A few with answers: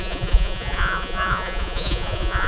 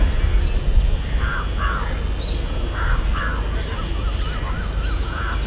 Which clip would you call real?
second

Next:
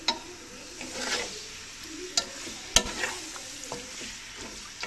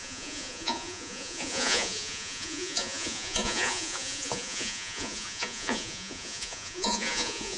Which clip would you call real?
first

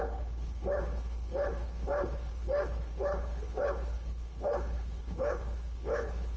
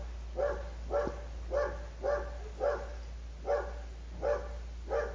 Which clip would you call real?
second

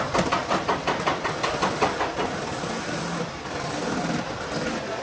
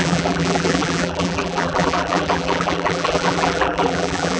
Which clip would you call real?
first